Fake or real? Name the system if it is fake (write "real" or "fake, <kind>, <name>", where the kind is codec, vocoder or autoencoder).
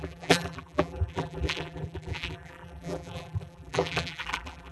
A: fake, vocoder, BigVGAN v2